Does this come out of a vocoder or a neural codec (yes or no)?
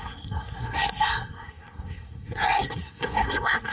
yes